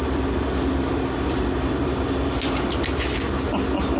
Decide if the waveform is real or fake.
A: real